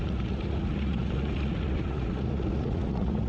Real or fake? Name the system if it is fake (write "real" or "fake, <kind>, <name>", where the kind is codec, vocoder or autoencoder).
fake, vocoder, Vocos